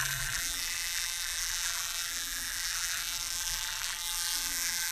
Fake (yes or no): yes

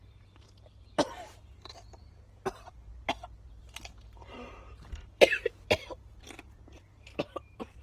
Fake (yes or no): yes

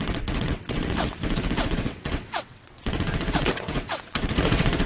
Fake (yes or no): yes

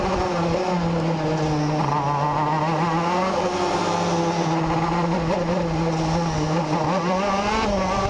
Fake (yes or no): no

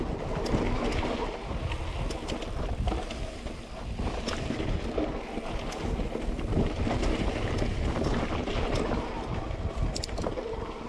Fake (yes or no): no